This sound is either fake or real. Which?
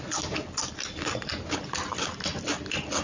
real